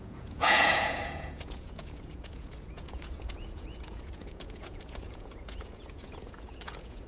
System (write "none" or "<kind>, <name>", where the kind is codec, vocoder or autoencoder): vocoder, Vocos